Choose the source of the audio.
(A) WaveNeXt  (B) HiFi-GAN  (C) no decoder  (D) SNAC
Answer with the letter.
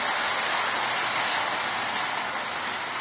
C